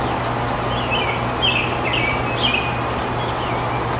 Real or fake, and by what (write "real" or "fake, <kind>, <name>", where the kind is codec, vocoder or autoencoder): real